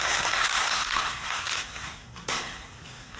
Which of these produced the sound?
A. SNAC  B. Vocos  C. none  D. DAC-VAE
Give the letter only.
A